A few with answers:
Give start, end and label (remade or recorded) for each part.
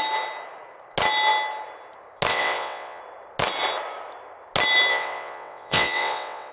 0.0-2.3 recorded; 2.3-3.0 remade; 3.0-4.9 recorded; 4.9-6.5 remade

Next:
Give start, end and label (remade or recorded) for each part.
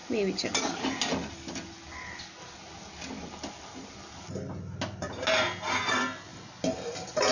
0.0-7.3 recorded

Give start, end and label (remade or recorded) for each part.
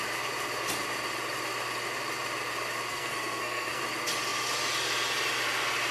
0.0-2.9 recorded; 2.9-3.8 remade; 3.8-5.9 recorded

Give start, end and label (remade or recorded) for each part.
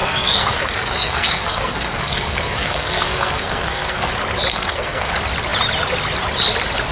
0.0-4.1 remade; 4.1-4.5 recorded; 4.5-5.1 remade; 5.1-6.9 recorded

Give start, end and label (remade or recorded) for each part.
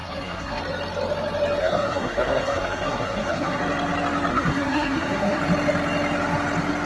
0.0-0.6 remade; 0.6-1.6 recorded; 1.6-3.6 remade; 3.6-4.3 recorded; 4.3-5.4 remade; 5.4-6.9 recorded